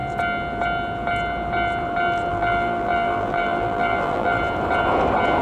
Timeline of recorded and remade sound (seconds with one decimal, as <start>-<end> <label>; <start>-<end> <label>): 0.0-2.3 recorded; 2.3-4.4 remade; 4.4-5.4 recorded